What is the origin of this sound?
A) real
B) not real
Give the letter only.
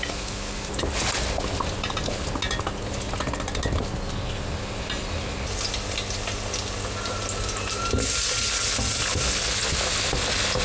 A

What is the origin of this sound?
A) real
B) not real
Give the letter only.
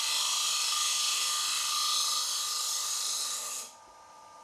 A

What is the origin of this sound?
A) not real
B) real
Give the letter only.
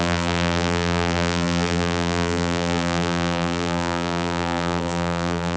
A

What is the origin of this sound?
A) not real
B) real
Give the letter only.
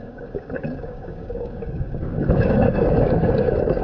A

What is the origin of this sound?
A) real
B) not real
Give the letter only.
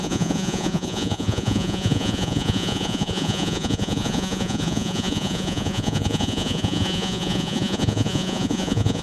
B